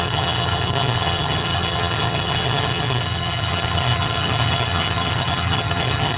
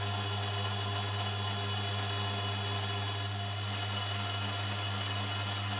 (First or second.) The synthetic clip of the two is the first